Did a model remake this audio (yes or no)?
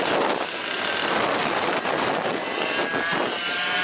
no